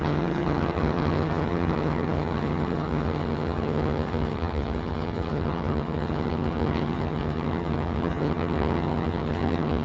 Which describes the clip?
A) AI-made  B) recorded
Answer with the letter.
A